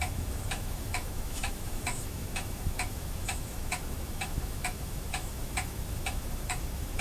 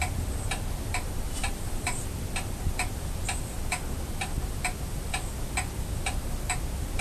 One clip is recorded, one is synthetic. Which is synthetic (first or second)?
first